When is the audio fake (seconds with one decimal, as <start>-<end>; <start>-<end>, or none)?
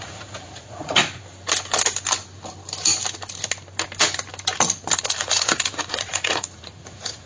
0.0-1.0; 5.0-7.3